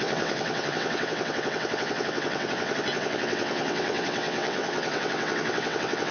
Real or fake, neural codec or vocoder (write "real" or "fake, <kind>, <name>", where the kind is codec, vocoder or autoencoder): fake, vocoder, WaveNeXt